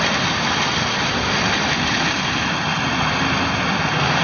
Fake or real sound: real